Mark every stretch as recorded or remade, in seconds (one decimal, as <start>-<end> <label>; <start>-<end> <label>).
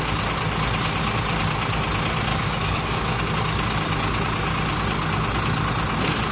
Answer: 0.0-2.3 recorded; 2.3-3.3 remade; 3.3-6.3 recorded